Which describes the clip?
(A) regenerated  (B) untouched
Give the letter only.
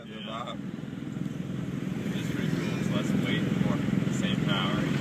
A